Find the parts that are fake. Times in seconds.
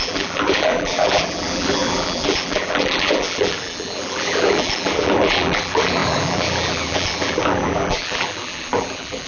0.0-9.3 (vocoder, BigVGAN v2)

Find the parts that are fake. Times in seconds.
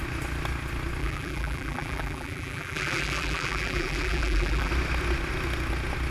1.0-4.7 (vocoder, BigVGAN v2)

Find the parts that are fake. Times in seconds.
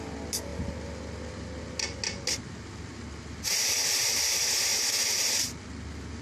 none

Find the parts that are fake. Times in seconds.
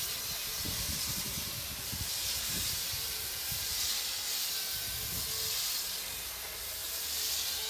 0.5-4.0 (vocoder, BigVGAN v2); 6.8-7.7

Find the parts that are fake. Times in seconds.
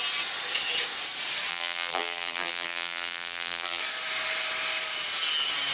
1.5-3.8 (vocoder, BigVGAN v2)